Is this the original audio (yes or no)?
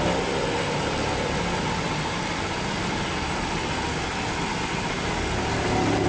yes